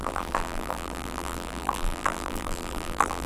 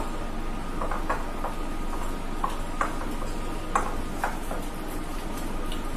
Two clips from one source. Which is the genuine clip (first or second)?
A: second